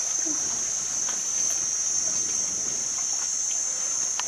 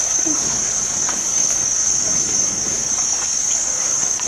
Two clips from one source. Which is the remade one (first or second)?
second